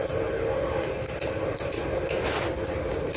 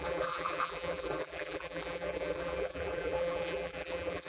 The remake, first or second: second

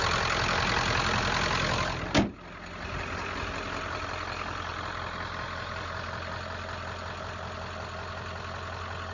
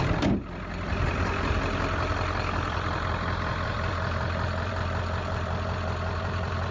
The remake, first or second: second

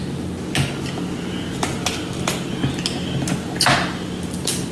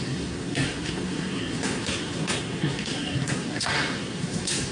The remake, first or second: second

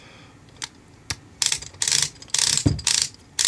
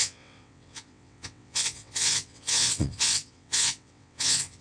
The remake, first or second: second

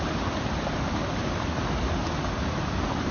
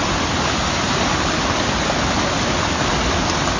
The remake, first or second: first